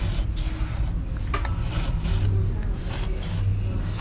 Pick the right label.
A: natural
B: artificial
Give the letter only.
A